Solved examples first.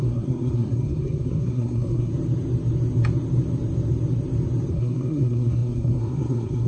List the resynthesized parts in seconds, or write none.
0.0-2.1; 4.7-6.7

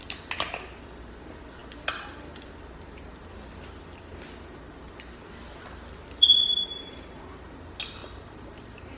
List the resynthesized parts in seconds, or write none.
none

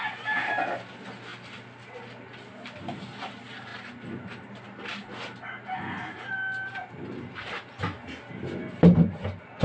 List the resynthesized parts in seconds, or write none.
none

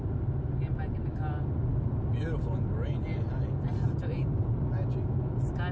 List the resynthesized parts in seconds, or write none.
3.7-4.6

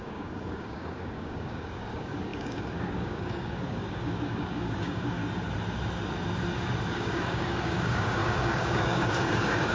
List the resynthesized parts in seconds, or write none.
0.0-5.2; 6.9-9.7

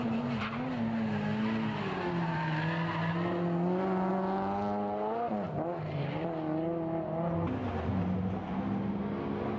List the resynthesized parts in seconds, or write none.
none

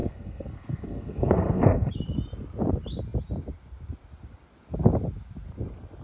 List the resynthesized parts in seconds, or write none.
0.0-1.9